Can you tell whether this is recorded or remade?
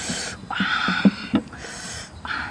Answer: remade